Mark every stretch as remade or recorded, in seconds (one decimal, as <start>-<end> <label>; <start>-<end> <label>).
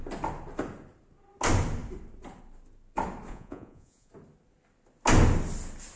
0.0-3.3 recorded; 3.3-4.1 remade; 4.1-6.0 recorded